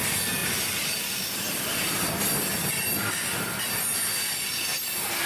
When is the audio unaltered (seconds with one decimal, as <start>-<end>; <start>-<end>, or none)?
0.0-5.3